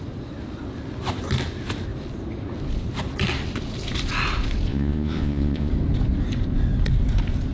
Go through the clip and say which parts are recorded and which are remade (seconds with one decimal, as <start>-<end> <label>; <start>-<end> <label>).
0.0-4.7 recorded; 4.7-5.7 remade; 5.7-7.5 recorded